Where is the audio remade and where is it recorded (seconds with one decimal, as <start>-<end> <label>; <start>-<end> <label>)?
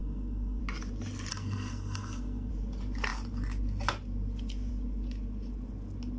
0.0-0.6 remade; 0.6-1.3 recorded; 1.3-2.5 remade; 2.5-6.2 recorded